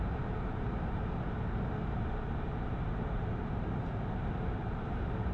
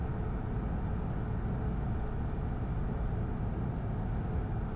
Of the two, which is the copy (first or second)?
first